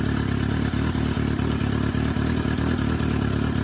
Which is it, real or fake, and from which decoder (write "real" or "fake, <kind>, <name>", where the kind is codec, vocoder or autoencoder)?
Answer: real